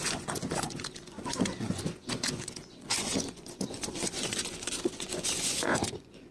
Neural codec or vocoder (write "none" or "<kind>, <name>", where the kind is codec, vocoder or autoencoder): vocoder, Vocos